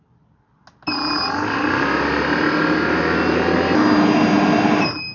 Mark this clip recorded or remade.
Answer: recorded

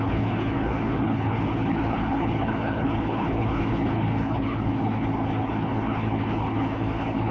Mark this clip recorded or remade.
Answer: remade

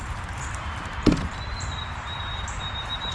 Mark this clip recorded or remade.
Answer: remade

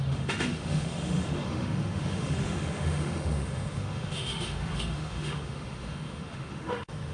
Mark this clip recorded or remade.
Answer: remade